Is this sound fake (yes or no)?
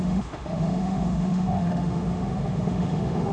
yes